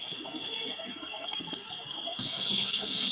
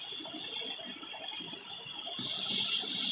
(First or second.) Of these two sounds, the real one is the second